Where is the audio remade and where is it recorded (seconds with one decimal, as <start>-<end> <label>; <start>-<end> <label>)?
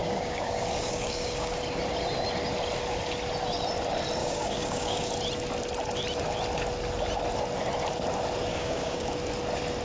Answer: 0.0-1.6 remade; 1.6-4.2 recorded; 4.2-5.1 remade; 5.1-8.5 recorded; 8.5-9.1 remade; 9.1-9.8 recorded